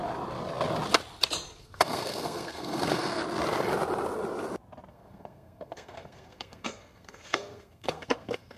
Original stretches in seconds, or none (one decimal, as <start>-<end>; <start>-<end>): 0.0-1.6; 3.2-4.9